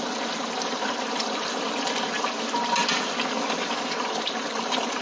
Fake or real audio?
real